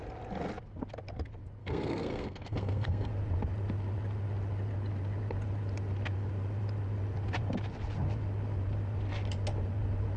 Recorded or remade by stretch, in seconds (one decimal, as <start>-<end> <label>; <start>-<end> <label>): 0.0-1.6 recorded; 1.6-3.1 remade; 3.1-10.2 recorded